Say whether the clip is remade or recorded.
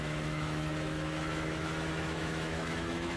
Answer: remade